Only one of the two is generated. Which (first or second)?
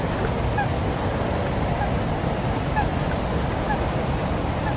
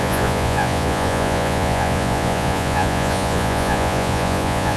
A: second